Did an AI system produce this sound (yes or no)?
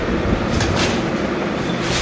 no